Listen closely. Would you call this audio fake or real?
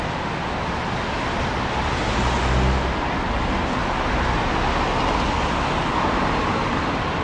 real